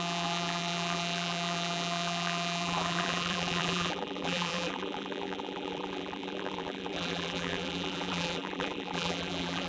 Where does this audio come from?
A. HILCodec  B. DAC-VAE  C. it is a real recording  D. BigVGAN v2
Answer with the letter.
D